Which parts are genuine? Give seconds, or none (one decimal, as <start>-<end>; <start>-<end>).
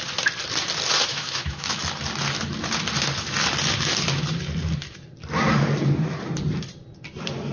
0.0-1.1; 1.8-7.5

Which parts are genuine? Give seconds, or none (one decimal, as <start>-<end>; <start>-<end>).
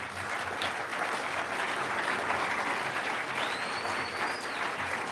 0.0-5.1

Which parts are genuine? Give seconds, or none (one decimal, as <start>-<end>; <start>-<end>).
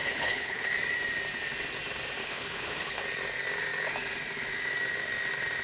0.7-2.2; 3.0-5.6